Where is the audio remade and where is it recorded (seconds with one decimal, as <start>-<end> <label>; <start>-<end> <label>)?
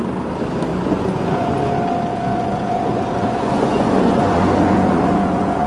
0.0-0.7 recorded; 0.7-1.7 remade; 1.7-2.1 recorded; 2.1-5.7 remade